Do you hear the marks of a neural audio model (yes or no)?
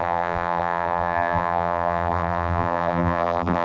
yes